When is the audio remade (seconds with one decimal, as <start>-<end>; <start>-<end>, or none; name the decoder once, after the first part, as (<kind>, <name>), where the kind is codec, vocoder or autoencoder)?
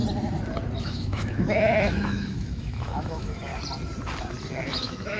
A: 0.8-3.5 (autoencoder, DAC-VAE); 4.5-5.2